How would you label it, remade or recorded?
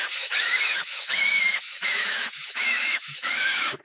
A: remade